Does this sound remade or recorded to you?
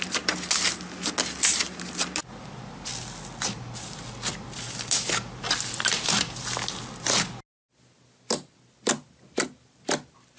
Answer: recorded